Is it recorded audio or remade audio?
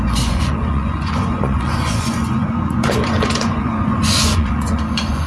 remade